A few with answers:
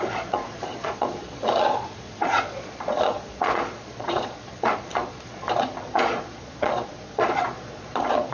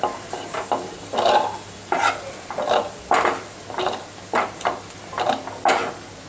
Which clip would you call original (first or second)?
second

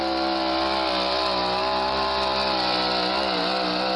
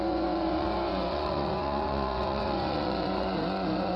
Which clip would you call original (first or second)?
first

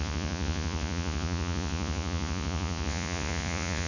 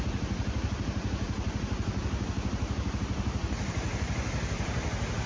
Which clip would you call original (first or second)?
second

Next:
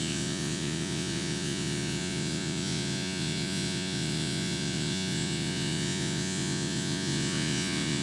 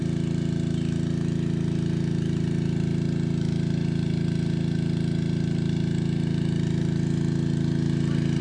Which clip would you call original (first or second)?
second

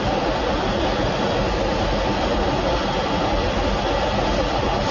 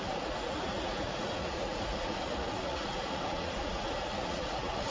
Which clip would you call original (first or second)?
first